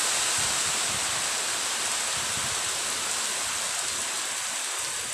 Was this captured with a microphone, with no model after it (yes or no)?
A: yes